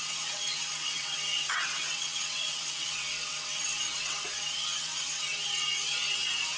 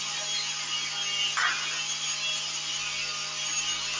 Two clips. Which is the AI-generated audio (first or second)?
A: first